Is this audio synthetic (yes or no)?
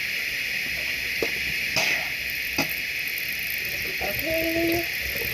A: no